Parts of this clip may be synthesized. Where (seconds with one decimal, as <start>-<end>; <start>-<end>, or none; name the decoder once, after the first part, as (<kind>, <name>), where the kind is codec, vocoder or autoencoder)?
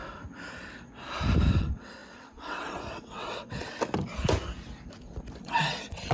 1.6-3.7 (vocoder, WaveNeXt); 5.4-6.1